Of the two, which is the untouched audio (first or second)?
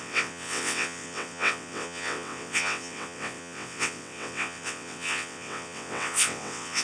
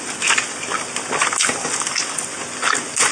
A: second